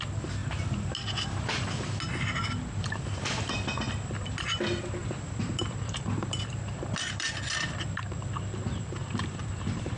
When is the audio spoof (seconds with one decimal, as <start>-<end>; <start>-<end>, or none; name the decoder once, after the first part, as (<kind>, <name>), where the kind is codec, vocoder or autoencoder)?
5.0-7.5 (vocoder, BigVGAN v2); 9.0-10.0